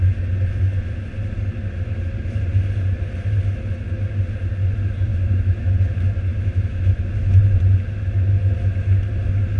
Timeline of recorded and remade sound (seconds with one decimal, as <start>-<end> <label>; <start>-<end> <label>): 0.0-5.1 recorded; 5.1-5.7 remade; 5.7-6.3 recorded; 6.3-7.4 remade; 7.4-9.6 recorded